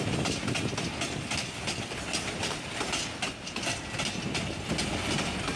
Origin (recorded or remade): recorded